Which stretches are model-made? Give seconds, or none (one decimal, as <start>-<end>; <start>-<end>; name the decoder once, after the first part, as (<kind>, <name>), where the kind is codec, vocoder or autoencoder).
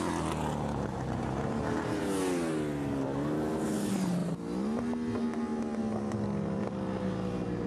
none